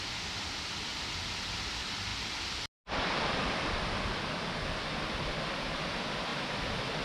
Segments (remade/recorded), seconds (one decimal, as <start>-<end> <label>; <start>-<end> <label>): 0.0-7.0 recorded